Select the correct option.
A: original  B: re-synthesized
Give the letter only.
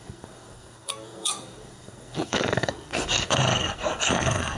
B